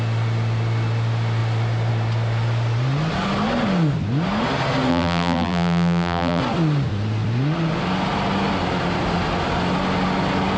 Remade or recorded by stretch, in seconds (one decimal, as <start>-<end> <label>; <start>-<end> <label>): 0.0-4.9 recorded; 4.9-6.4 remade; 6.4-10.6 recorded